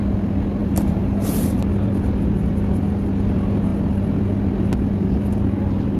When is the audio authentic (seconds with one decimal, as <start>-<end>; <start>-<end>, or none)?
0.0-0.6; 1.6-6.0